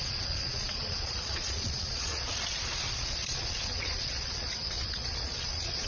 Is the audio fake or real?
fake